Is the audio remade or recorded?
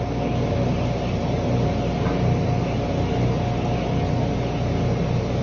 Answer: recorded